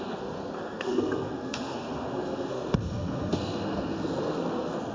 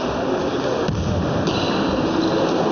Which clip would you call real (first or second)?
second